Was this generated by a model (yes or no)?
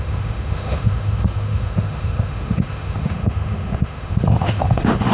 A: yes